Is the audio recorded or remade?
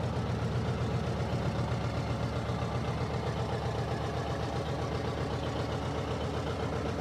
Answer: recorded